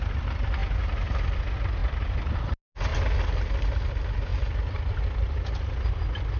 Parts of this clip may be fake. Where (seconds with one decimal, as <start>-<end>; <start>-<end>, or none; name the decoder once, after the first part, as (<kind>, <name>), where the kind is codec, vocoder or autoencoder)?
none